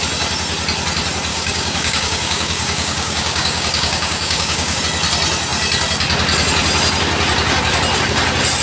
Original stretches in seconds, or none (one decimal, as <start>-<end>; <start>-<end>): 0.0-1.3; 4.8-8.6